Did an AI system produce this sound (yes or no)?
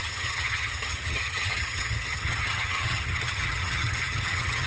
yes